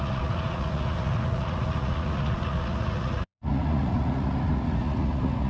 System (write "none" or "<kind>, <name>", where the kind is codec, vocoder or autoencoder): vocoder, Vocos